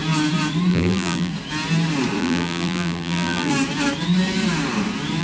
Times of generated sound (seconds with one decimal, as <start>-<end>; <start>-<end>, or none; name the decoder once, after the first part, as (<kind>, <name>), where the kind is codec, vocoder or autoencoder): 0.7-1.3 (vocoder, BigVGAN v2); 2.2-3.5